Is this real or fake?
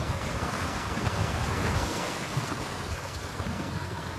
fake